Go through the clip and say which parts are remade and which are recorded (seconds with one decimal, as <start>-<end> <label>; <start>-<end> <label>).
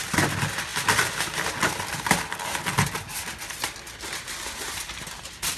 0.0-5.6 recorded